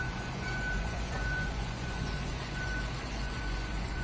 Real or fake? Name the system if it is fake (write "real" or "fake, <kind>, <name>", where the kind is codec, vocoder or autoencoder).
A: fake, vocoder, Vocos